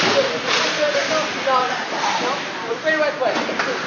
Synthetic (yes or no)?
no